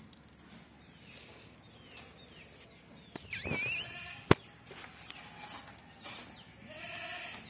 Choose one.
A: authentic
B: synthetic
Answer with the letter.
A